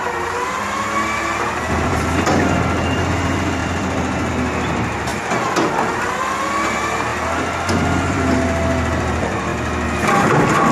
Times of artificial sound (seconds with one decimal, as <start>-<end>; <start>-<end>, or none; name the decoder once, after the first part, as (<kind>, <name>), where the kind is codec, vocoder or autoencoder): 0.0-5.1 (vocoder, BigVGAN v2); 6.5-9.5